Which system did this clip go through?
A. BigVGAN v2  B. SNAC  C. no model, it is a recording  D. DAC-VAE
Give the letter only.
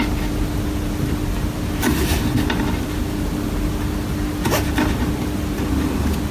C